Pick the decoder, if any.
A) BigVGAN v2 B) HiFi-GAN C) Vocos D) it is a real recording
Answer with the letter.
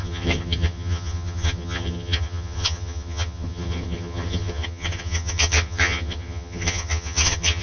B